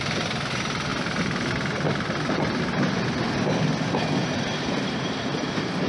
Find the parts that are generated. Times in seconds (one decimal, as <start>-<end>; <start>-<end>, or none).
0.9-2.6; 4.2-5.9